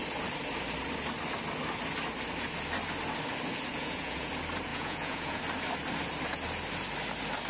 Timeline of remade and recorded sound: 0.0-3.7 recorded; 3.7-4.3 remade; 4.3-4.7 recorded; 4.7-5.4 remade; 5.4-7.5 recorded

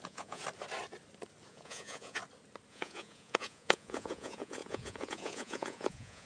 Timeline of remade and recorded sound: 0.0-0.4 remade; 0.4-1.5 recorded; 1.5-2.2 remade; 2.2-2.7 recorded; 2.7-6.3 remade

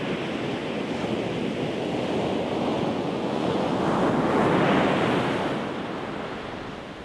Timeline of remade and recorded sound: 0.0-2.7 recorded; 2.7-3.8 remade; 3.8-7.0 recorded

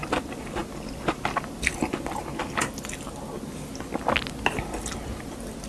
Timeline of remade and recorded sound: 0.0-5.7 recorded